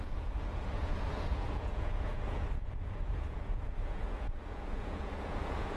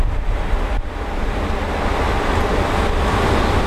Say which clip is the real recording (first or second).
second